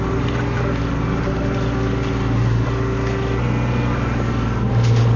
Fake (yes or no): no